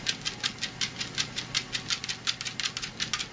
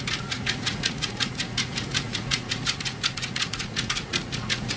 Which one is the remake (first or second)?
second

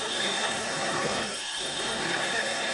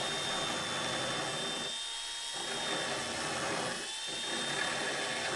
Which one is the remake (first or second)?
first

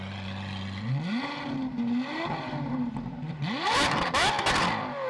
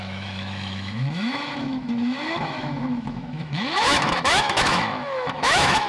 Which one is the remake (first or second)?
second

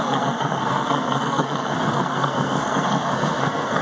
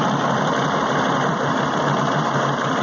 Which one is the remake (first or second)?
first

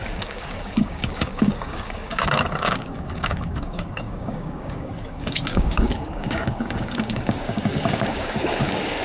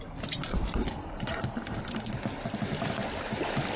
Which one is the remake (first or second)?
first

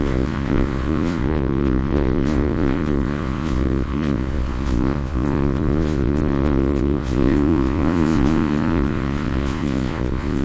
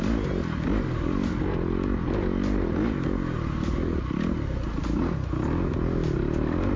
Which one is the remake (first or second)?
first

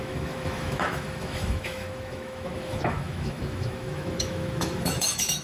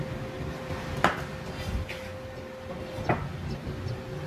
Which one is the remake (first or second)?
first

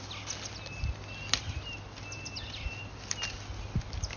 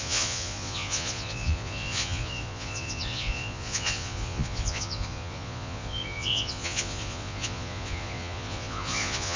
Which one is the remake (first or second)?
second